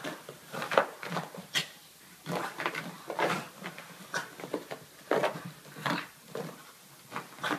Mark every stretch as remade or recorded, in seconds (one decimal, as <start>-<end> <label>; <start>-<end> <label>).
0.0-5.2 remade; 5.2-6.0 recorded; 6.0-7.6 remade